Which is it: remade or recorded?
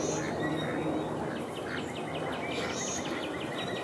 recorded